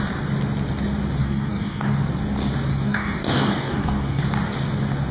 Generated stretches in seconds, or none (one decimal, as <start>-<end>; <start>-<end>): 1.2-2.0; 2.7-4.2